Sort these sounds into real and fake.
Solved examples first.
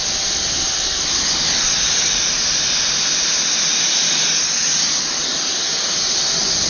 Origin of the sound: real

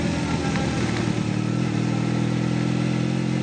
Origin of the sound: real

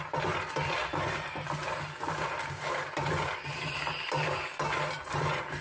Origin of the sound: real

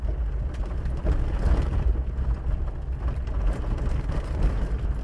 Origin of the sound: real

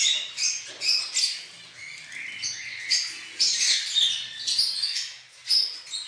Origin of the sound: real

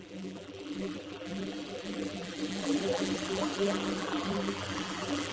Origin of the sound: fake